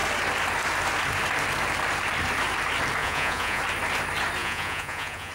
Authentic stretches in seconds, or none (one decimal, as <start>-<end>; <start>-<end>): 0.0-3.0; 3.6-4.4